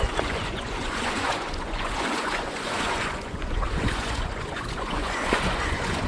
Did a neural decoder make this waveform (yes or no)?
yes